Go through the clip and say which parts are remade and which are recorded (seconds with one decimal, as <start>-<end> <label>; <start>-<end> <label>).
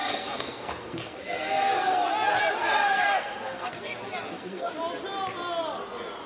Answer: 0.0-2.1 remade; 2.1-2.6 recorded; 2.6-4.7 remade; 4.7-6.3 recorded